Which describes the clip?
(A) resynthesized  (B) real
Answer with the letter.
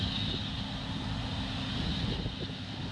B